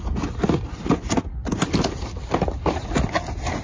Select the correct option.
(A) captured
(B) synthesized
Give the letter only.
A